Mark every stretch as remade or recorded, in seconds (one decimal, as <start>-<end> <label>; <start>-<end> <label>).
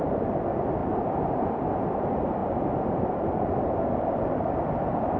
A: 0.0-5.2 recorded